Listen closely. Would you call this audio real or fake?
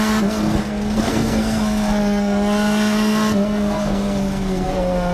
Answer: fake